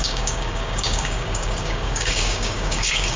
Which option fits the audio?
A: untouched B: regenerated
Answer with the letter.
B